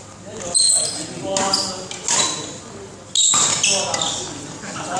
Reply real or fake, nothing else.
real